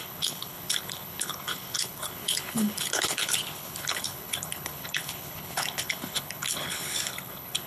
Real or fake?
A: fake